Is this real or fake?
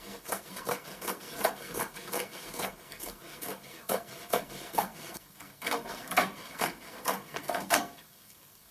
fake